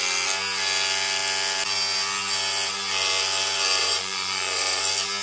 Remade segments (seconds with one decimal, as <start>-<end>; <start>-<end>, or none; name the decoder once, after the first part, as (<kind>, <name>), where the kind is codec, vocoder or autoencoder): 3.8-4.8 (vocoder, Vocos)